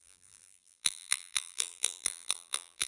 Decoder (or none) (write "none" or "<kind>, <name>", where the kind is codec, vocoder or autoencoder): vocoder, BigVGAN v2